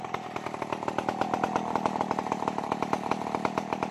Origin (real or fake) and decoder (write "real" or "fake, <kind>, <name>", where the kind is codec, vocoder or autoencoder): real